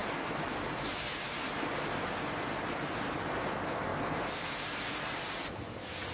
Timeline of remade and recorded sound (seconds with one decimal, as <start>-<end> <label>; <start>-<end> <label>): 0.0-0.7 remade; 0.7-3.9 recorded; 3.9-5.4 remade; 5.4-6.1 recorded

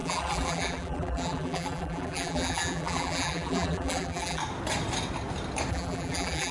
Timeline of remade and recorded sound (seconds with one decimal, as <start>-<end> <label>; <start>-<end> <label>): 0.0-4.4 remade; 4.4-5.7 recorded; 5.7-6.5 remade

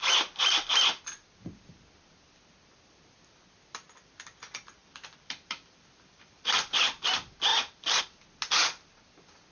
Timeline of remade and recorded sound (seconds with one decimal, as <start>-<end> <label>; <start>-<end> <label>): 0.0-4.8 recorded; 4.8-6.8 remade; 6.8-7.5 recorded; 7.5-8.0 remade; 8.0-9.5 recorded

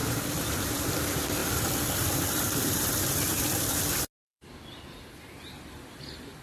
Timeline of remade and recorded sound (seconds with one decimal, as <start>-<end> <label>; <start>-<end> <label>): 0.0-0.9 remade; 0.9-1.4 recorded; 1.4-3.8 remade; 3.8-6.4 recorded

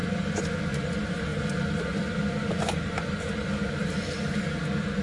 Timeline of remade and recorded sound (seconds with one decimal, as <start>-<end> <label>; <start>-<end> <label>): 0.0-0.9 remade; 0.9-5.0 recorded

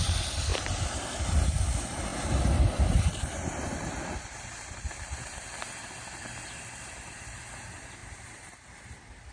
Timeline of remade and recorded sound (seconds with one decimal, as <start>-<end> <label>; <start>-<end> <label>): 0.0-8.0 recorded; 8.0-8.8 remade; 8.8-9.3 recorded